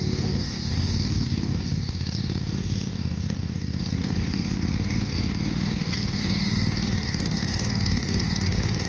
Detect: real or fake fake